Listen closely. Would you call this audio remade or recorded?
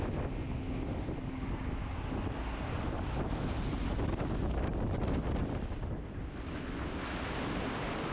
recorded